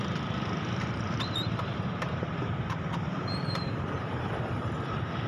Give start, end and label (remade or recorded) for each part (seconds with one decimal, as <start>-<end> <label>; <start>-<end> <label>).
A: 0.0-1.7 recorded; 1.7-4.4 remade; 4.4-5.3 recorded